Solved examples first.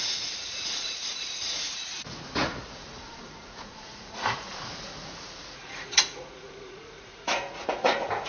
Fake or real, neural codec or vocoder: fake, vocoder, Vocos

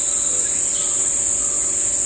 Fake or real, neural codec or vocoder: real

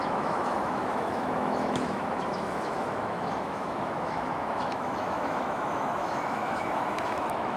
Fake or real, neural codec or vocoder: fake, autoencoder, DAC-VAE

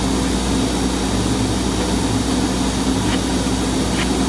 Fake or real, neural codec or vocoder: real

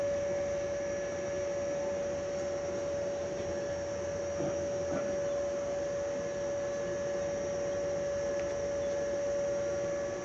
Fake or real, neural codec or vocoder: real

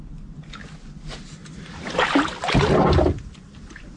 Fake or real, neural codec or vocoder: real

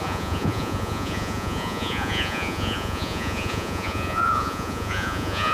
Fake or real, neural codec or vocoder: fake, vocoder, Vocos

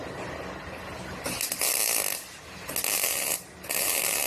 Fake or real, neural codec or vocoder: real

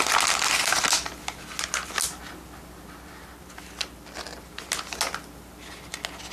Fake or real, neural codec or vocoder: real